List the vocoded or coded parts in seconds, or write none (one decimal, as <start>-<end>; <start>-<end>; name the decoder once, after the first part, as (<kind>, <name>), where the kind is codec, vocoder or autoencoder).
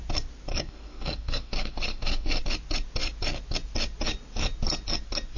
0.5-2.4 (codec, SNAC)